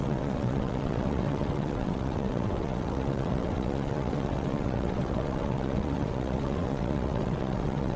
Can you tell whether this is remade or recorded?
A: remade